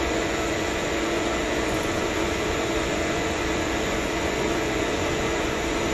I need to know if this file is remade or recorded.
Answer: remade